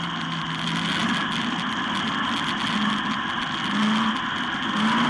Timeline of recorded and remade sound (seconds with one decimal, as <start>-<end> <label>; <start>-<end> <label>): 0.0-5.1 recorded